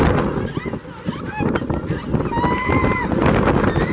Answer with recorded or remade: remade